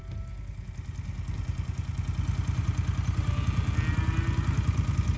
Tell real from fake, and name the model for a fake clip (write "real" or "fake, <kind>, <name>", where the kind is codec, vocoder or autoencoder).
real